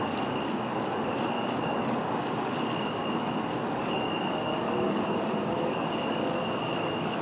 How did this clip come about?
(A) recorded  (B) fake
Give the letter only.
B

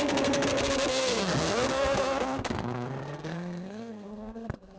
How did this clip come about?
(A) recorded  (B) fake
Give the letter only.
B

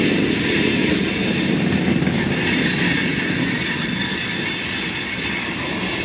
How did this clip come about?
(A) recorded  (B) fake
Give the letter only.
A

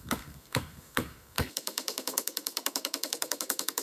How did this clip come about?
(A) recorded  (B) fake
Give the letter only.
B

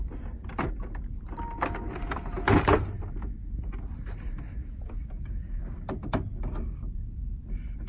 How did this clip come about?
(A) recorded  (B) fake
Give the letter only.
A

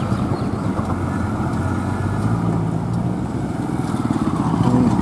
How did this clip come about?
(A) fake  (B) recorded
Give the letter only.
B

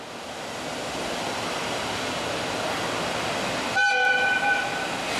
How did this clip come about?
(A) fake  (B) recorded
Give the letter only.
B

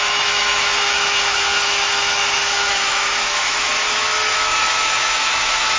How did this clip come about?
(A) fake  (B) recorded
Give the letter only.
A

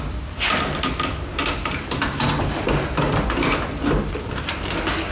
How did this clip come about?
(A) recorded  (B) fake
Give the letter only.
A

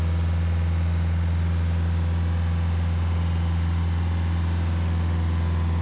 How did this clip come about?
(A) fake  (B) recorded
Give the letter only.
B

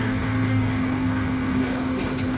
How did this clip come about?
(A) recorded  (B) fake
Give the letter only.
B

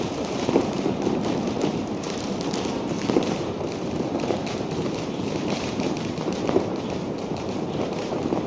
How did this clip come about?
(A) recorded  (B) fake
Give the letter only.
B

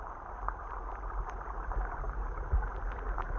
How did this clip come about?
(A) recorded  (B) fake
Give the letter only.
A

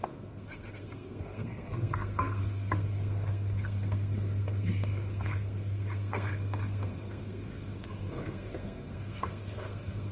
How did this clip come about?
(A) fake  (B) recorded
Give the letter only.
A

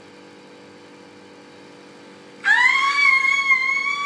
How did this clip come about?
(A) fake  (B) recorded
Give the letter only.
B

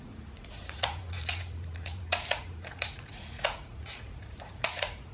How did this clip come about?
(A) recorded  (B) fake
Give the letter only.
B